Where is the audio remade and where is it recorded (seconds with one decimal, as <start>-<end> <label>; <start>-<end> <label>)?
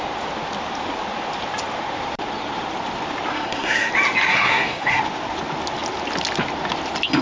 0.0-3.3 recorded; 3.3-3.9 remade; 3.9-4.3 recorded; 4.3-5.0 remade; 5.0-7.2 recorded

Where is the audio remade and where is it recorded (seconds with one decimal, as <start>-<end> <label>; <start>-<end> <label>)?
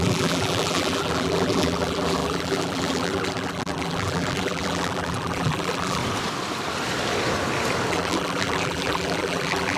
0.0-6.0 remade; 6.0-7.9 recorded; 7.9-9.8 remade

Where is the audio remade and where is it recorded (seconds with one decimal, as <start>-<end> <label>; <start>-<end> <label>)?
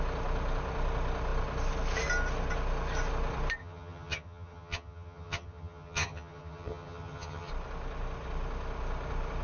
0.0-3.6 recorded; 3.6-7.5 remade; 7.5-9.4 recorded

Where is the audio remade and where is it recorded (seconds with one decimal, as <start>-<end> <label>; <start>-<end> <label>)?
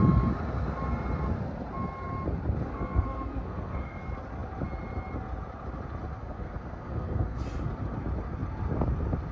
0.0-2.7 recorded; 2.7-4.0 remade; 4.0-6.2 recorded; 6.2-7.4 remade; 7.4-9.3 recorded